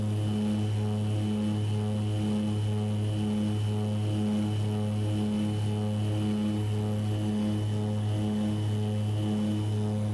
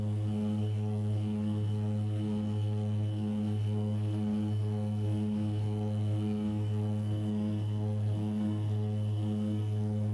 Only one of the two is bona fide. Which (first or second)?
first